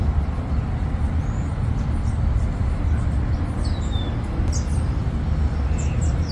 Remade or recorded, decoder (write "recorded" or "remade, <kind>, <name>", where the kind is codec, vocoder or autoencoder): recorded